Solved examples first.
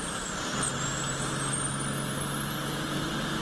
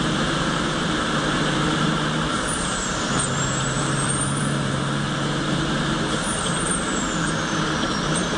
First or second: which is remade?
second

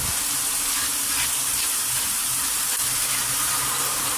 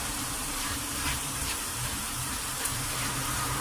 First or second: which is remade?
second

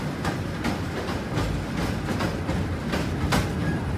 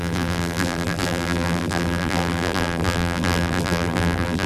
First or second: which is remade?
second